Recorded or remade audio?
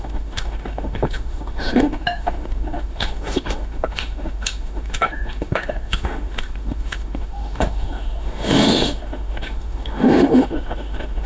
remade